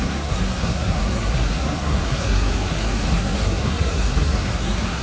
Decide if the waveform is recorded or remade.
remade